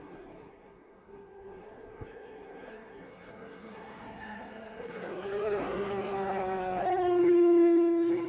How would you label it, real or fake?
fake